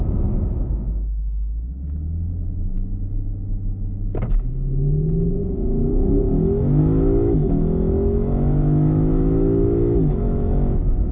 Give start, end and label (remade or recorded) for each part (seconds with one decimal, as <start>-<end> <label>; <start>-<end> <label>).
0.0-11.1 remade